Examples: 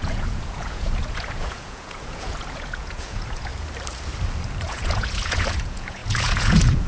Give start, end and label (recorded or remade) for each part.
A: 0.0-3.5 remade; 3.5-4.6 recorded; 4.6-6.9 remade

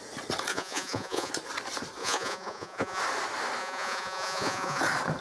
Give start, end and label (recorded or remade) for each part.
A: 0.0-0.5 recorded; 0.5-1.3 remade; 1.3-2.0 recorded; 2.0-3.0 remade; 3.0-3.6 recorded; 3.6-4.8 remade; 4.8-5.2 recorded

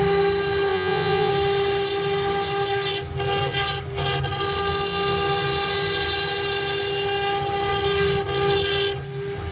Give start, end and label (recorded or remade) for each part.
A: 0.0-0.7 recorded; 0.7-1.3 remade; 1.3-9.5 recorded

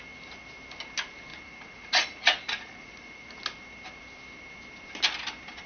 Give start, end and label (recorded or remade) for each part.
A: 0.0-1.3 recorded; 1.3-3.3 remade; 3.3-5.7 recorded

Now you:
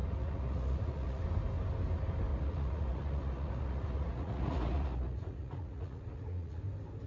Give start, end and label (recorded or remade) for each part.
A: 0.0-1.2 remade; 1.2-2.3 recorded; 2.3-6.6 remade; 6.6-7.1 recorded

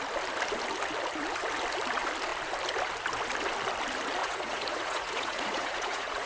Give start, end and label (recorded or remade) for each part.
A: 0.0-4.2 recorded; 4.2-6.3 remade

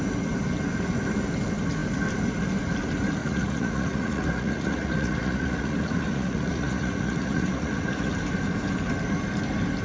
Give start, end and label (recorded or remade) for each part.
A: 0.0-3.2 recorded; 3.2-8.1 remade; 8.1-9.8 recorded